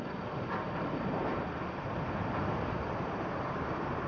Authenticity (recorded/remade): remade